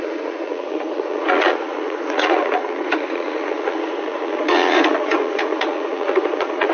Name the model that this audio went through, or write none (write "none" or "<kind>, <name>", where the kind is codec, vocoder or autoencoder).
vocoder, Vocos